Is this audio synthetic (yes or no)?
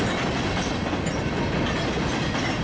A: no